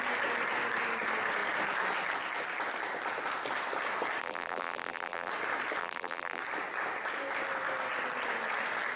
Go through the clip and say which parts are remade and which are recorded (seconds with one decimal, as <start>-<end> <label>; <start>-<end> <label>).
0.0-4.2 recorded; 4.2-5.3 remade; 5.3-5.8 recorded; 5.8-6.4 remade; 6.4-9.0 recorded